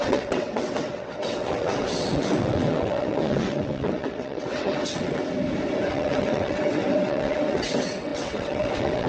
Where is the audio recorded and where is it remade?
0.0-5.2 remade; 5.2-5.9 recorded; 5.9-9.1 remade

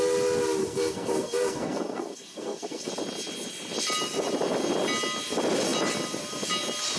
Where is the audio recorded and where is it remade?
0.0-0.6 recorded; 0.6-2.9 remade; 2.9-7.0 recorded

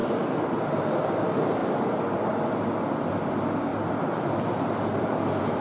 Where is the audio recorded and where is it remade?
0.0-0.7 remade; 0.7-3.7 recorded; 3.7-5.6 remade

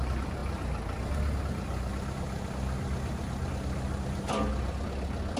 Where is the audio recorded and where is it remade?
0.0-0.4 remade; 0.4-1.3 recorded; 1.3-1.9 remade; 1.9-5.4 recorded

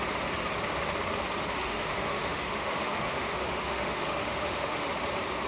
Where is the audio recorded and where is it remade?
0.0-1.6 recorded; 1.6-4.9 remade; 4.9-5.5 recorded